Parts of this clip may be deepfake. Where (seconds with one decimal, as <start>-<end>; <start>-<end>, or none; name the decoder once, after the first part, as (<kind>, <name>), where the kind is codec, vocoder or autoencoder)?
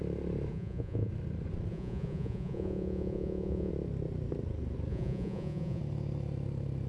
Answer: 0.5-1.1 (vocoder, Vocos); 1.7-3.7; 4.9-5.8